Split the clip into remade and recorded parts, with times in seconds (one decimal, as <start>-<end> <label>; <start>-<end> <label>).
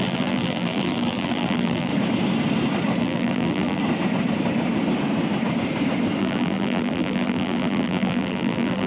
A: 0.0-1.9 remade; 1.9-3.0 recorded; 3.0-3.8 remade; 3.8-6.2 recorded; 6.2-8.9 remade